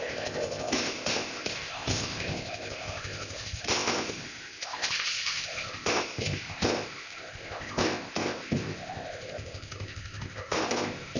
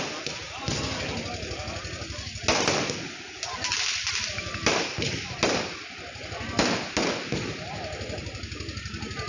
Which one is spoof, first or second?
first